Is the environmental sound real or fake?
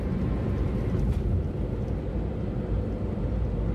real